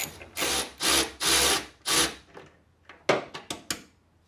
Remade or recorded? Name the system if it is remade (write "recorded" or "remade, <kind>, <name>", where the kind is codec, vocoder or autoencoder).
recorded